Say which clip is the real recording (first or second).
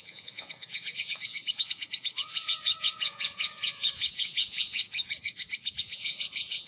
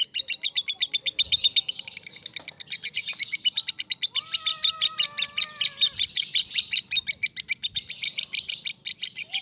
second